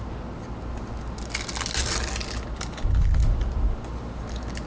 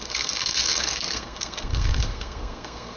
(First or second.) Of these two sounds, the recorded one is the first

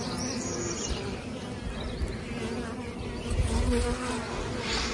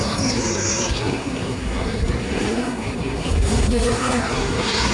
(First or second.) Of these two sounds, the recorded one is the first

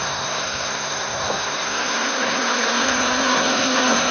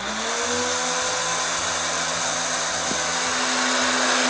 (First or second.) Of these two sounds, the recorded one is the second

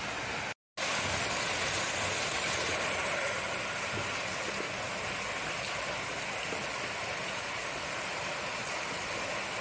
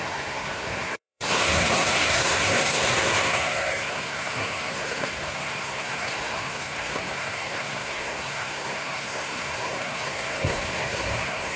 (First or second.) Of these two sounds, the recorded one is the first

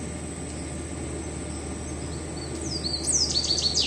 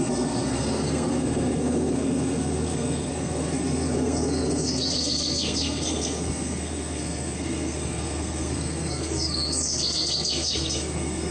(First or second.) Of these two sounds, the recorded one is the first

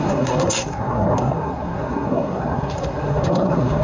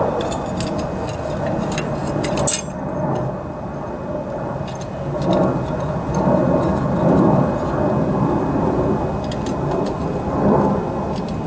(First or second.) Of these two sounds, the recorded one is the second